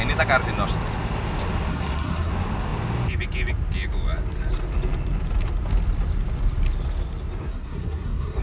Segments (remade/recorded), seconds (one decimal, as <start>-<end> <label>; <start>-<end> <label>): 0.0-1.7 recorded; 1.7-2.3 remade; 2.3-7.5 recorded; 7.5-8.4 remade